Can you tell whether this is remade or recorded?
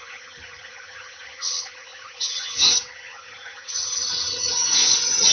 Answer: remade